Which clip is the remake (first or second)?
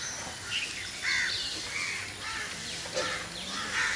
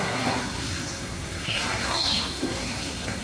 second